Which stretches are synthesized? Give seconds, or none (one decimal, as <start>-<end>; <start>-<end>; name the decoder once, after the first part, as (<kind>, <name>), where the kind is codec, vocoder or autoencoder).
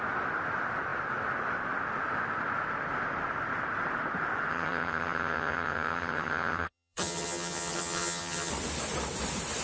4.5-8.5 (vocoder, HiFi-GAN)